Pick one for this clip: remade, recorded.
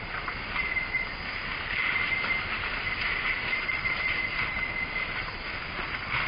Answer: recorded